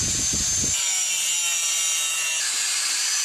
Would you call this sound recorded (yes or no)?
yes